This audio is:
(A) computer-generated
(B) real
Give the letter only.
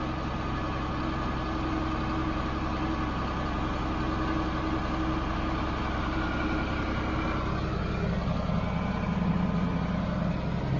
B